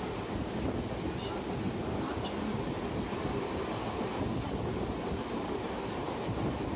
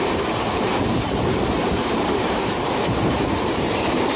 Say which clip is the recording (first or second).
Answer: first